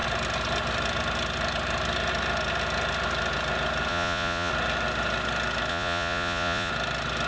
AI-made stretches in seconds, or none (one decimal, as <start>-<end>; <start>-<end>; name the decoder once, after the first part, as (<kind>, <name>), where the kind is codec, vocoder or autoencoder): 3.9-4.5 (vocoder, Vocos); 5.7-6.7